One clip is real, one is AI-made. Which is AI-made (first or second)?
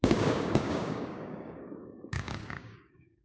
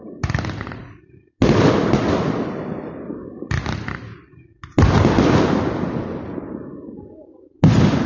first